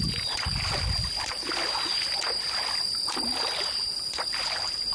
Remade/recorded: recorded